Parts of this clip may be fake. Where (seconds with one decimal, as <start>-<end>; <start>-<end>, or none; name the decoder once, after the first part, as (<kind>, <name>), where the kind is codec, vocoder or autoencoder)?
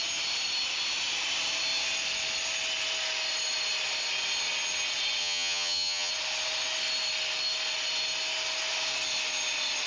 5.2-6.1 (vocoder, HiFi-GAN)